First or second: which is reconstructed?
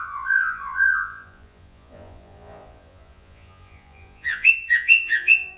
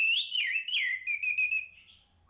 first